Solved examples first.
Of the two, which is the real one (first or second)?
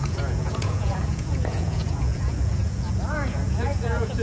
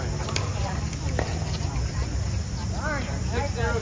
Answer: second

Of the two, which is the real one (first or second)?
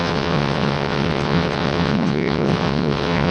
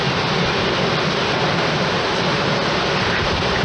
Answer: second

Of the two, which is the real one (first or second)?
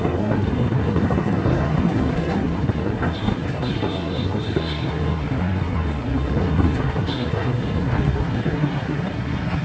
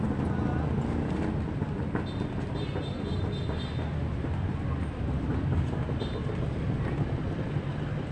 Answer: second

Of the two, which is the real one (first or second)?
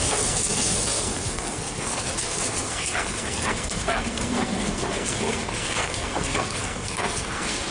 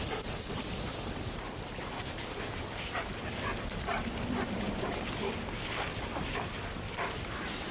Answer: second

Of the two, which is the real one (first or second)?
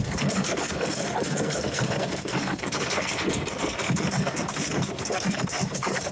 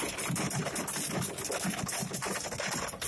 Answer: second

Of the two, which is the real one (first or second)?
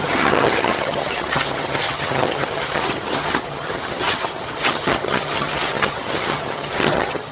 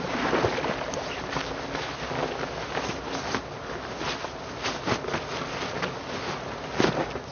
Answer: second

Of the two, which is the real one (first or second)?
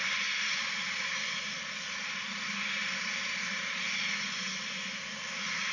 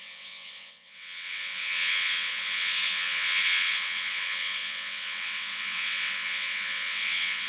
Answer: first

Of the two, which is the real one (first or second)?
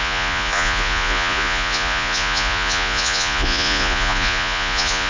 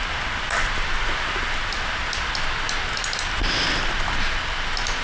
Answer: second